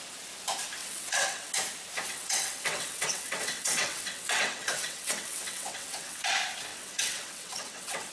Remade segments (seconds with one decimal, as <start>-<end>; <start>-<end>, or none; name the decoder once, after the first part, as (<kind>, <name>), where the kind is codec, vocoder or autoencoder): 0.8-1.5 (vocoder, WaveNeXt); 2.1-6.3; 6.7-8.1